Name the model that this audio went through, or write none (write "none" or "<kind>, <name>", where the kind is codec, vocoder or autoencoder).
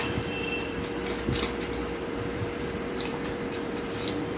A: vocoder, BigVGAN v2